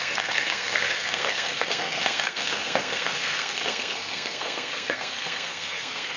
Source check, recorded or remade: remade